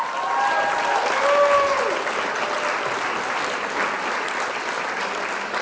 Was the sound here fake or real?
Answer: real